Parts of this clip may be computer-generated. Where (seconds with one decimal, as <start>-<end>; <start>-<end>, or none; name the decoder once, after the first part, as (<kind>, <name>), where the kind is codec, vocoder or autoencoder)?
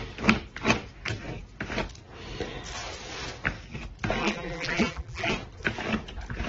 4.2-5.3 (vocoder, BigVGAN v2)